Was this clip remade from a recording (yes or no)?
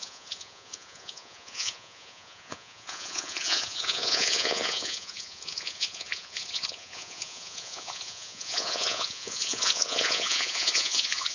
yes